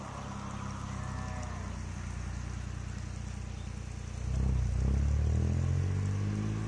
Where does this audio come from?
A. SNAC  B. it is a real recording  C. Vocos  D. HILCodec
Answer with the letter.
B